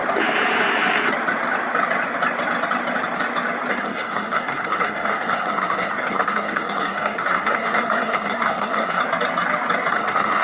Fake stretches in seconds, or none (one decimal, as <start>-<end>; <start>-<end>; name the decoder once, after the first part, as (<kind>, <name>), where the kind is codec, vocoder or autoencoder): 3.7-9.0 (codec, SNAC); 9.9-10.4